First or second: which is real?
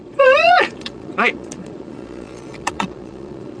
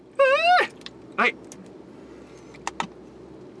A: second